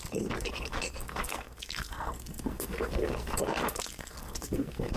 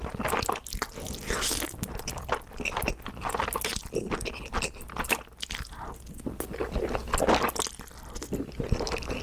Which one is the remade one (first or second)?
first